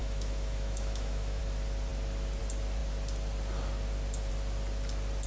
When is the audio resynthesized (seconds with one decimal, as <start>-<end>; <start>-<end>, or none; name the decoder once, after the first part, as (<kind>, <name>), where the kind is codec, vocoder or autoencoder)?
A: 0.0-1.4 (autoencoder, DAC-VAE)